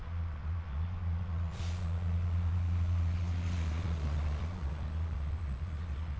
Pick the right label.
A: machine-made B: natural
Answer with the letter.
A